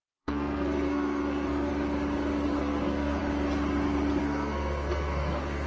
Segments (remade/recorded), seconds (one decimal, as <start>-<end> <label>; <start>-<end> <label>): 0.0-1.7 remade; 1.7-2.6 recorded; 2.6-3.2 remade; 3.2-4.2 recorded; 4.2-5.7 remade